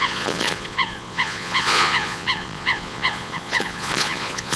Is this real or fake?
fake